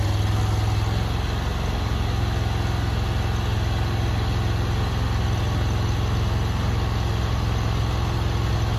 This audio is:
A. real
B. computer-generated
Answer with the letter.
A